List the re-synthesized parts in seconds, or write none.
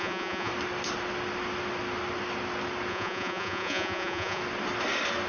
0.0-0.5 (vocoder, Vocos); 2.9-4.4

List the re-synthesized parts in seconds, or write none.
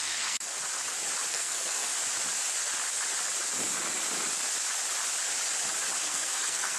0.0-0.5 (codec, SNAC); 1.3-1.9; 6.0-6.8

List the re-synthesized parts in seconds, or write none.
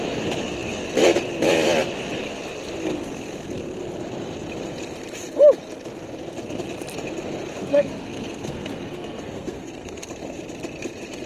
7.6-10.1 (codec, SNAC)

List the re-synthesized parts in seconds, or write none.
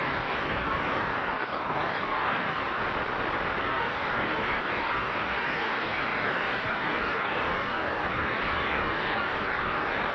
0.0-2.8 (codec, DAC); 3.6-10.1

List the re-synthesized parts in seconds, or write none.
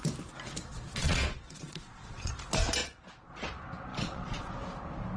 0.7-2.3 (vocoder, Vocos); 3.9-4.5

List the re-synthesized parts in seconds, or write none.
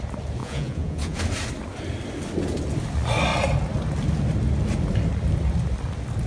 0.4-1.2 (vocoder, Vocos)